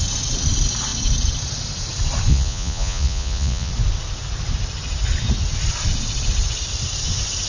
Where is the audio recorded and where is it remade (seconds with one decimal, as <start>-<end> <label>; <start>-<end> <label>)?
0.0-2.3 recorded; 2.3-3.7 remade; 3.7-7.5 recorded